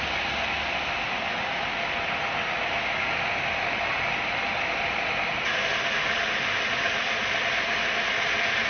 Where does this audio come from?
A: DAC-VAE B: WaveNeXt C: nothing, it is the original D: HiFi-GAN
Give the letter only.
C